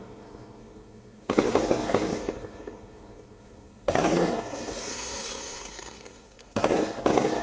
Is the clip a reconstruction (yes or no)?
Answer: yes